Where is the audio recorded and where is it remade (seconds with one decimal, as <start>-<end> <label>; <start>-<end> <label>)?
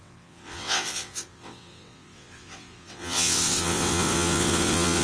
0.0-5.0 remade